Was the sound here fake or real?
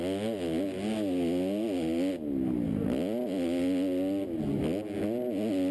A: real